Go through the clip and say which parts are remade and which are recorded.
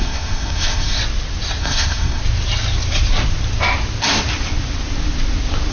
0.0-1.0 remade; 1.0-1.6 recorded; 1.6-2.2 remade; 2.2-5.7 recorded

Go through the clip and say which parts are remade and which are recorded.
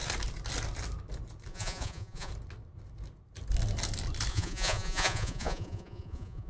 0.0-1.5 recorded; 1.5-2.3 remade; 2.3-4.3 recorded; 4.3-6.5 remade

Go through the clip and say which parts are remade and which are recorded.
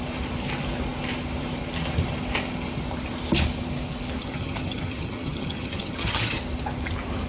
0.0-4.2 recorded; 4.2-6.4 remade; 6.4-7.3 recorded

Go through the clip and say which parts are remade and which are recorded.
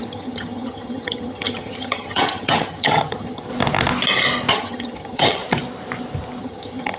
0.0-3.5 remade; 3.5-4.5 recorded; 4.5-5.4 remade; 5.4-6.4 recorded; 6.4-7.0 remade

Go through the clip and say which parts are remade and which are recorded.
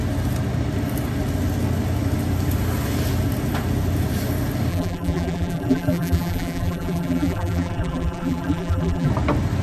0.0-4.7 recorded; 4.7-9.1 remade; 9.1-9.6 recorded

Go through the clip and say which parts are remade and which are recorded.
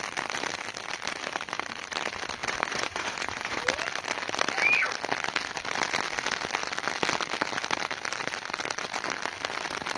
0.0-2.4 recorded; 2.4-3.6 remade; 3.6-10.0 recorded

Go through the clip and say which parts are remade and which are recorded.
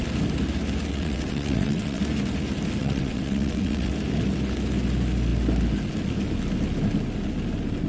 0.0-0.9 recorded; 0.9-2.0 remade; 2.0-2.8 recorded; 2.8-3.9 remade; 3.9-7.9 recorded